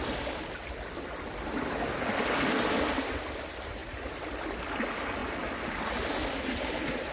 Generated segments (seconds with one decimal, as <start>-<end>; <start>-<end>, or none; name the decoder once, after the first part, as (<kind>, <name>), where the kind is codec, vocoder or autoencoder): none